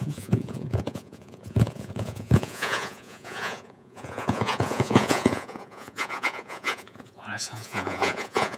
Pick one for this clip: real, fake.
fake